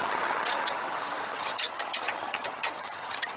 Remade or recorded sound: remade